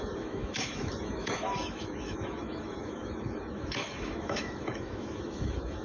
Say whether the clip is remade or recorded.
remade